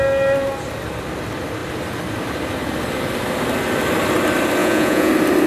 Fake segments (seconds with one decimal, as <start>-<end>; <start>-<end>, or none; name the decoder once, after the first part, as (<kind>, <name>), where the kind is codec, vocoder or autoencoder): 4.6-5.1 (vocoder, Vocos)